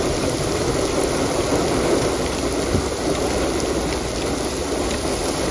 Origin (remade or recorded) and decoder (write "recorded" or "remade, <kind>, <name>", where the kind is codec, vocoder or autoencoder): recorded